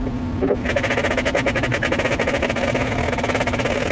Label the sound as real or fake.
real